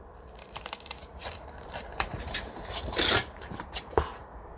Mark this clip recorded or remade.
remade